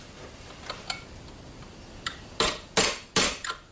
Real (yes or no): yes